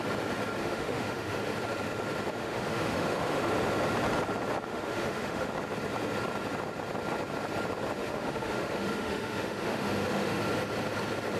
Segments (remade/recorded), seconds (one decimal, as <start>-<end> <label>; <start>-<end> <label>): 0.0-0.6 recorded; 0.6-1.4 remade; 1.4-2.4 recorded; 2.4-3.5 remade; 3.5-4.7 recorded; 4.7-5.5 remade; 5.5-8.0 recorded; 8.0-10.4 remade; 10.4-11.4 recorded